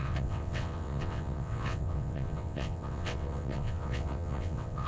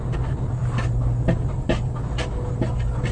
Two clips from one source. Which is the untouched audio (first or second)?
second